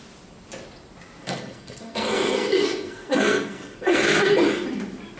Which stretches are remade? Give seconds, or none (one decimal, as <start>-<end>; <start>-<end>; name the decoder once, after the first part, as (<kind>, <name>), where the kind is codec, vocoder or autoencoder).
1.2-4.3 (codec, SNAC)

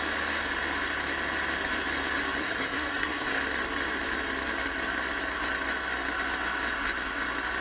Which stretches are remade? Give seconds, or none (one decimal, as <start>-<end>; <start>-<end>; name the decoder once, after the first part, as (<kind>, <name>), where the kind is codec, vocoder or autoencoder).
2.4-3.4 (codec, SNAC)